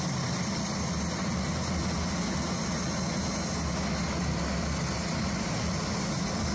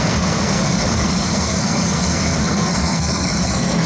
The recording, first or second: first